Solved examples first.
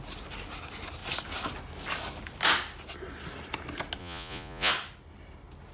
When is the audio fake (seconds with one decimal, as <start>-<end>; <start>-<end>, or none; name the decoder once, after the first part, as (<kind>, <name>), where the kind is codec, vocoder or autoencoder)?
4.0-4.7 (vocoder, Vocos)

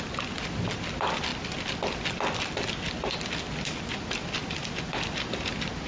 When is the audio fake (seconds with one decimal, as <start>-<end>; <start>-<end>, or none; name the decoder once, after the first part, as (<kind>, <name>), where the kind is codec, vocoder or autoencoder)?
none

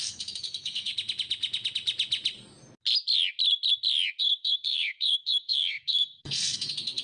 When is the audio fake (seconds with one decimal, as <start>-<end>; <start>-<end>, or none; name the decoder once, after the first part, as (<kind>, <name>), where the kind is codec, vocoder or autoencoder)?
0.0-0.9 (codec, SNAC); 4.2-7.0